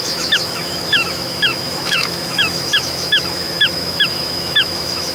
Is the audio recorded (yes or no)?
no